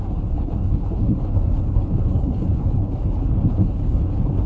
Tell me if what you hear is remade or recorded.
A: remade